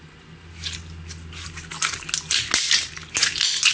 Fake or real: real